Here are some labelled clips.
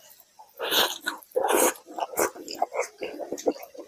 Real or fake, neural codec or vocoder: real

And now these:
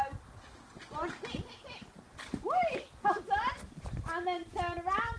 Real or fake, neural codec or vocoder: real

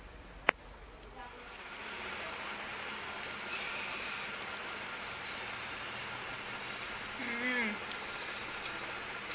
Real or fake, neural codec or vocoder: real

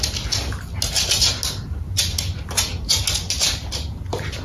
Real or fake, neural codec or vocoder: real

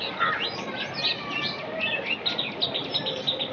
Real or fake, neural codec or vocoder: real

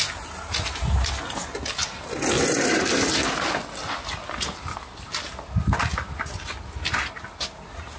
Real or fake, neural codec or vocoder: real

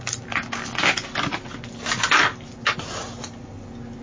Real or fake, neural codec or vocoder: real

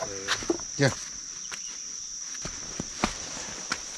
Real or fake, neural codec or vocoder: real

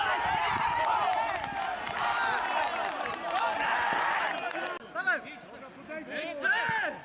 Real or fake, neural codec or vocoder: real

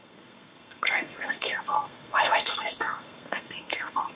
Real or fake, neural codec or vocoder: fake, codec, SNAC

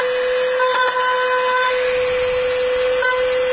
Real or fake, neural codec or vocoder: real